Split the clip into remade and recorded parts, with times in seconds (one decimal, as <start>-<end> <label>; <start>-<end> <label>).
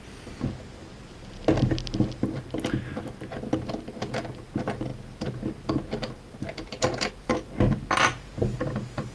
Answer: 0.0-9.1 recorded